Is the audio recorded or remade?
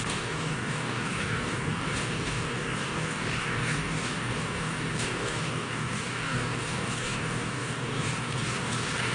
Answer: remade